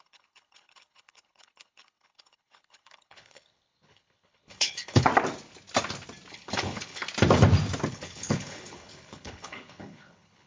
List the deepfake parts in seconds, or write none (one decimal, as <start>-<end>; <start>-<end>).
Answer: 0.0-5.1; 6.3-7.0; 7.9-10.5